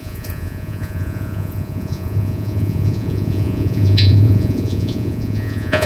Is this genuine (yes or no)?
no